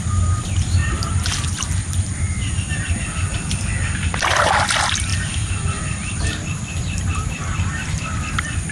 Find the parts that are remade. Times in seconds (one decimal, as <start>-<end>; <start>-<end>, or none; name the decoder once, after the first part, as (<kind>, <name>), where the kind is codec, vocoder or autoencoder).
0.8-2.7 (vocoder, BigVGAN v2); 5.1-8.7